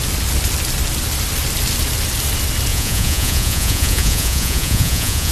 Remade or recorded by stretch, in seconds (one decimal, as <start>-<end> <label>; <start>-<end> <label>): 0.0-2.7 recorded; 2.7-5.3 remade